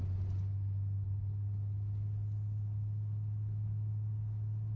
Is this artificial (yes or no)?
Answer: no